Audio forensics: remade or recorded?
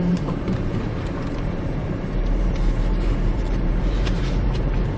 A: remade